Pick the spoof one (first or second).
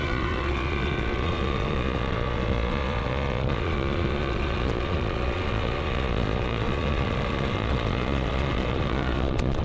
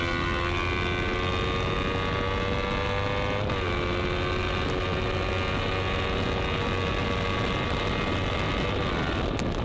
first